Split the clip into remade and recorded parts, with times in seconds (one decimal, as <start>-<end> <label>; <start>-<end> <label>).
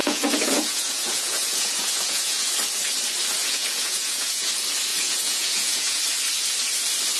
0.0-2.5 remade; 2.5-3.4 recorded; 3.4-4.5 remade; 4.5-4.9 recorded; 4.9-6.0 remade; 6.0-7.2 recorded